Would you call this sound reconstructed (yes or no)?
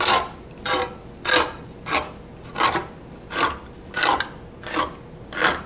no